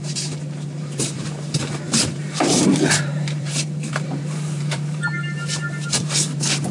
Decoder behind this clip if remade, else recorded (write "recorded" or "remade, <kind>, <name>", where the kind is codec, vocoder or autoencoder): remade, vocoder, BigVGAN v2